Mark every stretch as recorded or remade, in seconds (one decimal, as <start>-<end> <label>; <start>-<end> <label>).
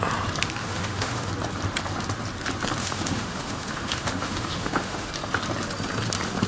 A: 0.0-0.6 recorded; 0.6-1.3 remade; 1.3-2.8 recorded; 2.8-5.1 remade; 5.1-6.5 recorded